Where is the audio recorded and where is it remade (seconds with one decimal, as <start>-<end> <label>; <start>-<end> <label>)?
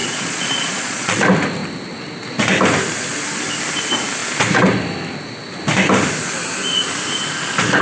0.0-1.2 remade; 1.2-7.8 recorded